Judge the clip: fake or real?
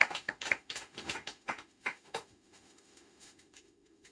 fake